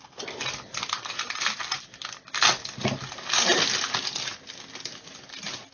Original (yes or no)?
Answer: yes